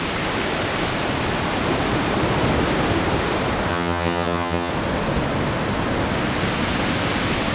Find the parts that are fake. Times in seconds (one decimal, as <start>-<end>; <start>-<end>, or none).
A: 3.7-4.7